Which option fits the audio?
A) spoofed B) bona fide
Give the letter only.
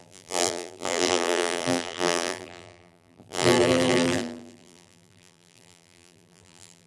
A